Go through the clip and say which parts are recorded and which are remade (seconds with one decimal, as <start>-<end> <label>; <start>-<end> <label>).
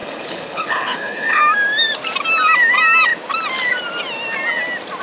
0.0-1.4 remade; 1.4-5.0 recorded